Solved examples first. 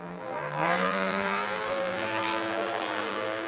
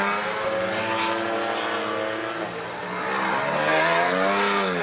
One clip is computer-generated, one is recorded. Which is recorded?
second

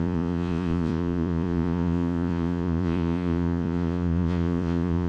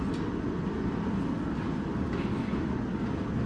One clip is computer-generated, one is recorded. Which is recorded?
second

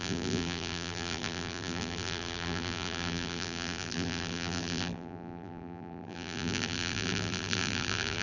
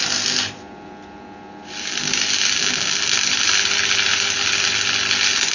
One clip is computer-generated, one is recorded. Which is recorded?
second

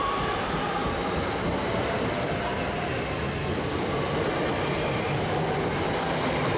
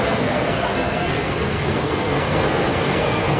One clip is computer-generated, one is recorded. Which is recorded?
first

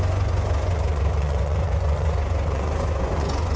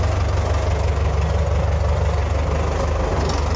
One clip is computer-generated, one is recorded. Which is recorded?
second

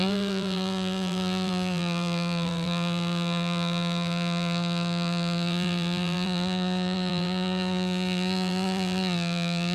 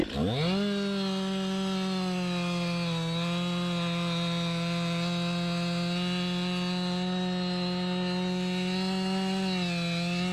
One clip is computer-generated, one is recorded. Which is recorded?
second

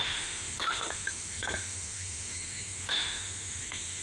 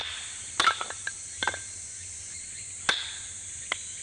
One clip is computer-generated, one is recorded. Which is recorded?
second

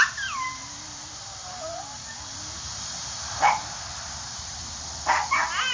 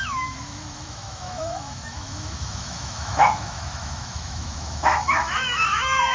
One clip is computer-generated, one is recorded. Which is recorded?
first